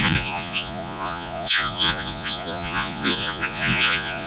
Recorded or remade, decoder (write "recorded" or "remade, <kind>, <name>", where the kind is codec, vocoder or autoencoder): remade, vocoder, Vocos